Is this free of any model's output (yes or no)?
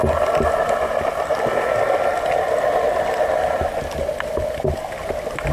yes